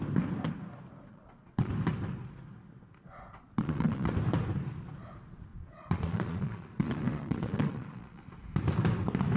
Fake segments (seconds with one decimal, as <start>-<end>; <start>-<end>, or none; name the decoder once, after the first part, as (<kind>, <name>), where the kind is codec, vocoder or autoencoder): 1.1-1.7 (vocoder, Vocos); 3.3-4.1; 5.5-8.2